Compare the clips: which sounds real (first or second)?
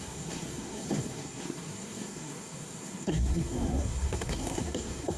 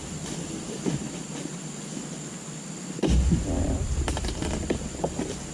second